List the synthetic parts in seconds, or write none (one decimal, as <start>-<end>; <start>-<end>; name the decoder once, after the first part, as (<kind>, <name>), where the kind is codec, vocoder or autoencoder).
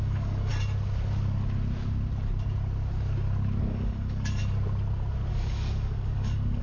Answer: 0.0-0.5 (codec, DAC); 3.6-4.4; 5.3-6.6